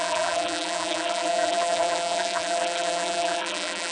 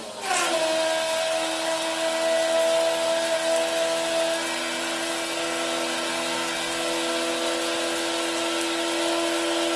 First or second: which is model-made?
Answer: first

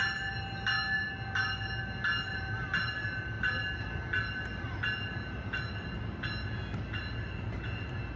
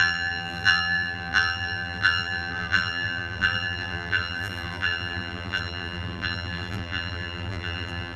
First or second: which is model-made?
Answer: second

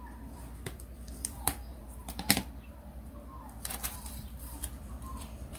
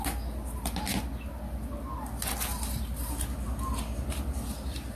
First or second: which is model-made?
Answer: first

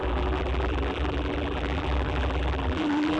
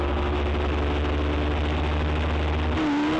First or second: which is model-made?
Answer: first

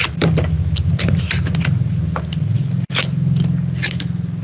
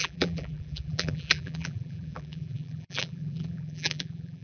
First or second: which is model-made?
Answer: second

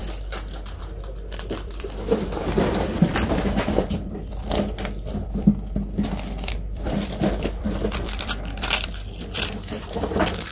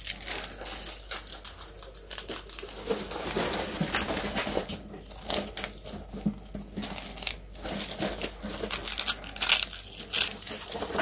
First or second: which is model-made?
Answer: first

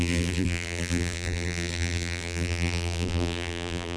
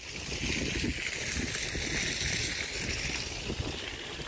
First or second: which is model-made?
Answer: first